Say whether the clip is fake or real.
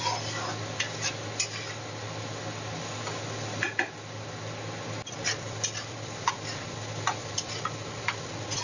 real